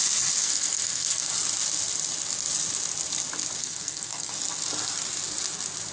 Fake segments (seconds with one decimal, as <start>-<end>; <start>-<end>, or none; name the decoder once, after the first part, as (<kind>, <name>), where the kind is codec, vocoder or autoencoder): 0.4-1.3 (codec, SNAC); 3.6-4.3